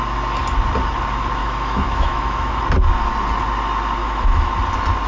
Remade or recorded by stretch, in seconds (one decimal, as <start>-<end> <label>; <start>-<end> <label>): 0.0-1.4 recorded; 1.4-2.6 remade; 2.6-4.0 recorded; 4.0-4.5 remade; 4.5-5.1 recorded